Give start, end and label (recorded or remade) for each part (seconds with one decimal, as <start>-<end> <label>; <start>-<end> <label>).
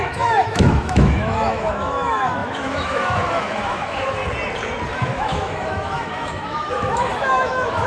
0.0-4.2 remade; 4.2-4.9 recorded; 4.9-7.9 remade